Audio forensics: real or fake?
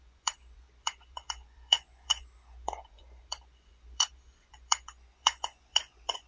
fake